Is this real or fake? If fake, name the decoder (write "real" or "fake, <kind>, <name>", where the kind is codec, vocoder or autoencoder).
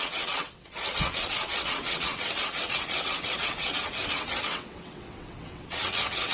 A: fake, vocoder, WaveNeXt